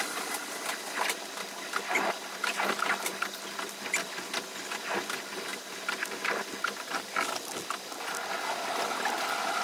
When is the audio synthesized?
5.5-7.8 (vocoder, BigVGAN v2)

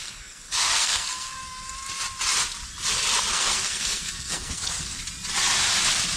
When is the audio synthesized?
0.0-1.4 (codec, SNAC); 3.3-5.0

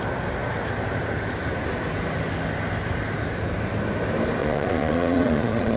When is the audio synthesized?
4.4-5.8 (vocoder, Vocos)